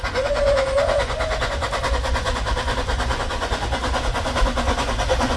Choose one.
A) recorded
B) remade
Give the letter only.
B